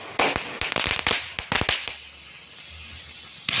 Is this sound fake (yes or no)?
no